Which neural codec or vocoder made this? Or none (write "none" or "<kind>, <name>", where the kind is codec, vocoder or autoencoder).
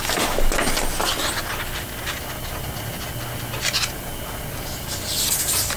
none